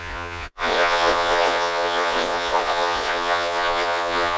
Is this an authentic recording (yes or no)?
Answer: no